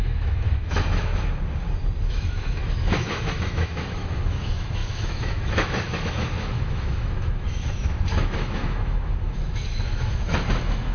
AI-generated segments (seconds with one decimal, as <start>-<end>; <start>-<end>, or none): 0.0-1.1; 2.1-10.9